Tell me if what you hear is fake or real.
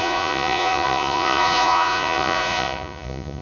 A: fake